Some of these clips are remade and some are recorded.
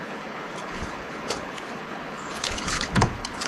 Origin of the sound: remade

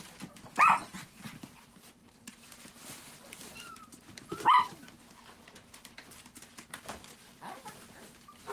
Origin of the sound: remade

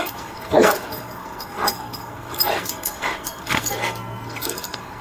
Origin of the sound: remade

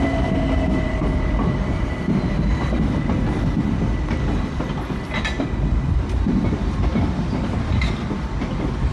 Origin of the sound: recorded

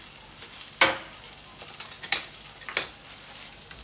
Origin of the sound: recorded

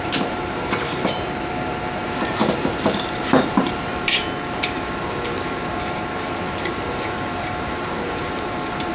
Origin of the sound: remade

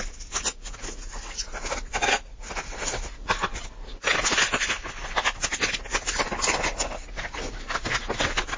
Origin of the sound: recorded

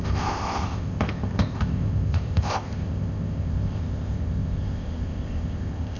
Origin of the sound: remade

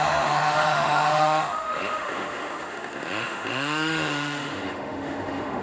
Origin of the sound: remade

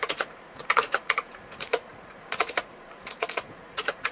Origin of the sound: remade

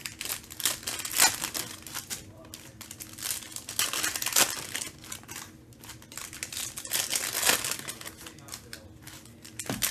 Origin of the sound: recorded